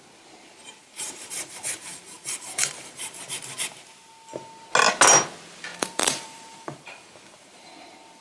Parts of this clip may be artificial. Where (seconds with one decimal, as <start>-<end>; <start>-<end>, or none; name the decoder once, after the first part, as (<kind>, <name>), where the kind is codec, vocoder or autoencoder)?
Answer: 0.8-3.2 (vocoder, BigVGAN v2); 5.7-7.7